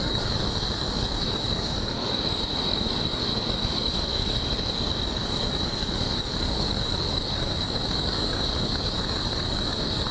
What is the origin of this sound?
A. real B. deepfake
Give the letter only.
B